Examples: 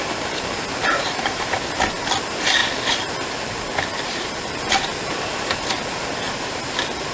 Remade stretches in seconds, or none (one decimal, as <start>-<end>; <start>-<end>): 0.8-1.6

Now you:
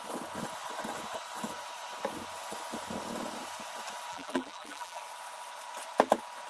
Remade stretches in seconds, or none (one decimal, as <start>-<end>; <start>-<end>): 4.1-5.0

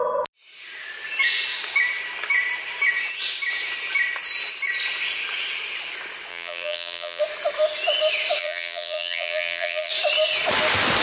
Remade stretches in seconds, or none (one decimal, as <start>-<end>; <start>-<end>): 6.3-7.2; 8.4-9.9

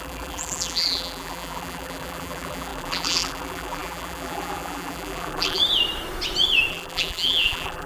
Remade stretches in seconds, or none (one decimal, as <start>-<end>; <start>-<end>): 0.0-5.6; 6.7-7.9

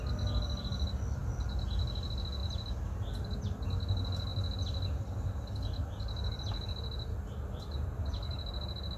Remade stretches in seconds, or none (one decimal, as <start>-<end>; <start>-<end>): none

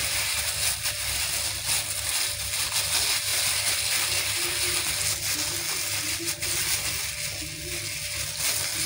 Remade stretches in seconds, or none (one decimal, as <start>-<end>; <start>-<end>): none

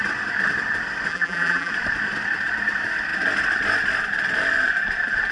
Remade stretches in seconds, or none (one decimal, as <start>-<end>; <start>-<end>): 1.1-1.7